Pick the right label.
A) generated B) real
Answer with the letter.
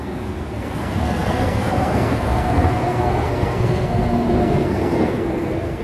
A